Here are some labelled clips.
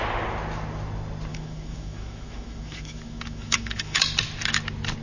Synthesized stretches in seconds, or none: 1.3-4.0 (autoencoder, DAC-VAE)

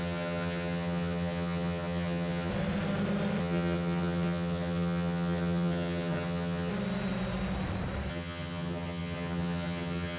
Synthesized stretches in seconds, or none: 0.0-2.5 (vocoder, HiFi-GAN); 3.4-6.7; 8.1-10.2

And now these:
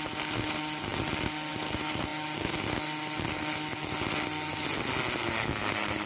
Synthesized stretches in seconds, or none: none

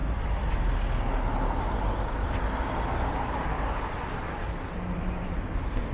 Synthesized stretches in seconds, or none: none

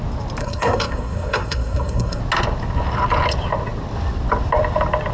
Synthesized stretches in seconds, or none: 0.4-2.2 (codec, SNAC)

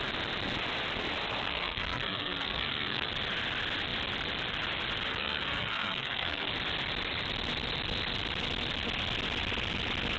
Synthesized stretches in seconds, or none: 1.4-3.1 (codec, SNAC); 5.1-6.5